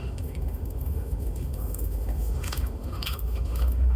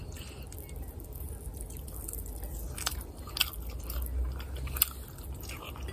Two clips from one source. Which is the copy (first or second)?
first